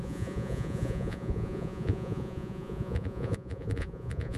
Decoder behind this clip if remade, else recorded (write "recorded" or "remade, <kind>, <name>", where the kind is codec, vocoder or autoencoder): remade, vocoder, Vocos